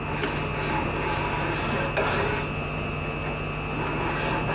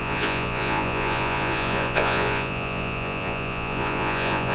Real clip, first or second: first